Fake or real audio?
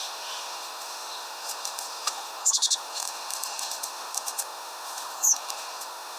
fake